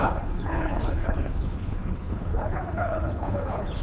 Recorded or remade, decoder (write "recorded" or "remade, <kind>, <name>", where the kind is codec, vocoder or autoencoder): remade, codec, HILCodec